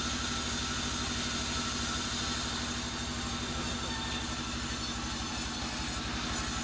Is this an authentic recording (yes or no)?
yes